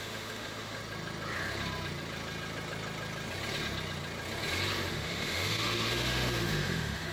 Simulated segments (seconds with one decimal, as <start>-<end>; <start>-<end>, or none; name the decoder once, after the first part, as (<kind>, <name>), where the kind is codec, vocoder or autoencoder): 0.0-0.8 (autoencoder, DAC-VAE); 4.9-7.1